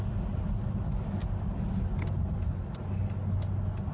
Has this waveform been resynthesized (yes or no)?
no